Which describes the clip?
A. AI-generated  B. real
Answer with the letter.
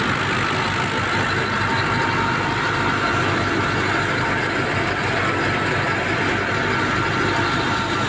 B